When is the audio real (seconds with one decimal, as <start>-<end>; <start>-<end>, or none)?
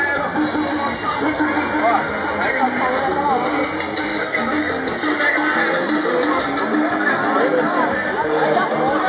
0.0-9.1